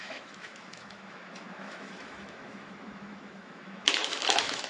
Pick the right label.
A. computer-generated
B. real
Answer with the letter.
A